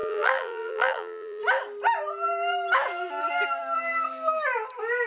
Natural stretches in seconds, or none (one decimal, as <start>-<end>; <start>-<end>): 1.4-5.1